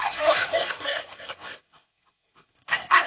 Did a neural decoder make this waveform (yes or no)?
yes